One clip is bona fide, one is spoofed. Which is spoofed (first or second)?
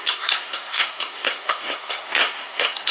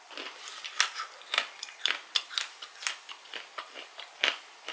first